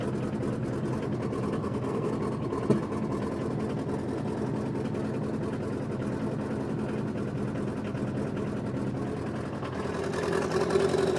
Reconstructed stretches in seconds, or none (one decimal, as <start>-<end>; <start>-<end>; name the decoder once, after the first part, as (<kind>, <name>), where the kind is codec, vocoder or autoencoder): 1.6-2.1 (codec, SNAC)